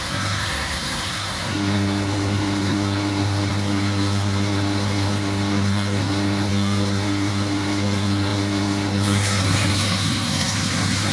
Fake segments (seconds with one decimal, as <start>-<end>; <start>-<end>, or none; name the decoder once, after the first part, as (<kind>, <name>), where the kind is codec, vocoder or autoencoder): 0.0-11.1 (codec, SNAC)

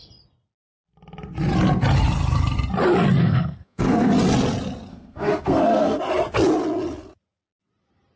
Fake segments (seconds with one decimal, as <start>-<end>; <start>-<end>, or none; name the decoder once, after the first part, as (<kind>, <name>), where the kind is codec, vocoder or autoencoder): 3.2-4.1 (codec, SNAC); 4.9-6.0